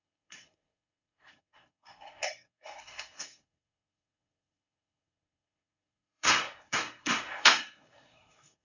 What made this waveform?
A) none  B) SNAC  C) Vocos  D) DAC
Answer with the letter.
B